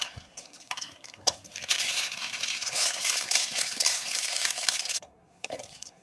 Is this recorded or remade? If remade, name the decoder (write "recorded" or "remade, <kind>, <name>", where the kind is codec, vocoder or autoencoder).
remade, codec, SNAC